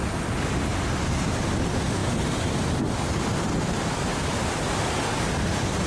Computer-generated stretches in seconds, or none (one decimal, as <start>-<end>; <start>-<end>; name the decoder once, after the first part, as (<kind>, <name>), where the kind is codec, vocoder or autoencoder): none

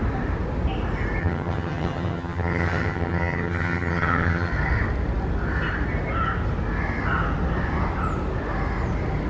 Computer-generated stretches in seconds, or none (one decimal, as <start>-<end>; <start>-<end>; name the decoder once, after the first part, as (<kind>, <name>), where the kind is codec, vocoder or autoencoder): 1.2-4.5 (vocoder, HiFi-GAN)